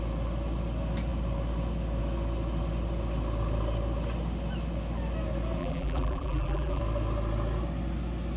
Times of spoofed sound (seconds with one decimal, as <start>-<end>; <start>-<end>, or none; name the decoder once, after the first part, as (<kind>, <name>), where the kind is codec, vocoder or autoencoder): 5.6-6.8 (vocoder, BigVGAN v2)